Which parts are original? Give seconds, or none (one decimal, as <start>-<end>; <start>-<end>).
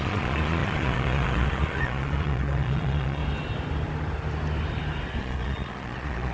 3.2-5.2